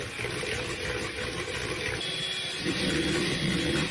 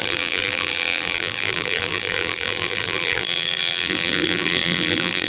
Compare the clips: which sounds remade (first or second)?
second